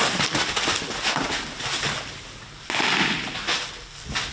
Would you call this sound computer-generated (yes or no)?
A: no